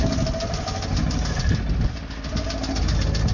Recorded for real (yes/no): yes